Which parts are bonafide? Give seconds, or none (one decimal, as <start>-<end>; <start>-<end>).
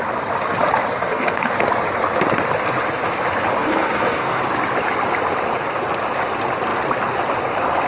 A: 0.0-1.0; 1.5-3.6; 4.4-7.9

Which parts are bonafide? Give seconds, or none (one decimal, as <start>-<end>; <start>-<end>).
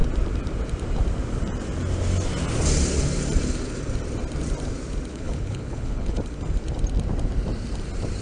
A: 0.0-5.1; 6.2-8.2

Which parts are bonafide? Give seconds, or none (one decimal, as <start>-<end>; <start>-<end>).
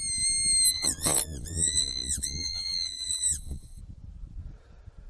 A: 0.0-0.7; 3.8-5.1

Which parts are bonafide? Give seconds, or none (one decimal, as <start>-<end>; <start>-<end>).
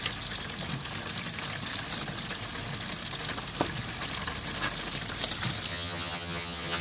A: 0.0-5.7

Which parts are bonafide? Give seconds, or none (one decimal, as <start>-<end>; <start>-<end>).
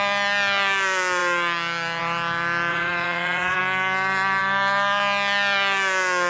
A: 0.0-2.7; 3.6-6.3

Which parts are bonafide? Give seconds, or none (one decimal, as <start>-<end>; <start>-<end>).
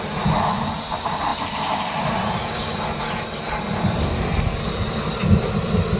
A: 0.0-6.0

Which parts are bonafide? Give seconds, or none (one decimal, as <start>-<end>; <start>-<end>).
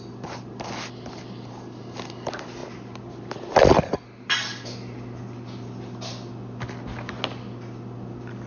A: 0.0-8.5